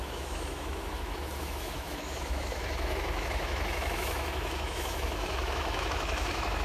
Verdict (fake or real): fake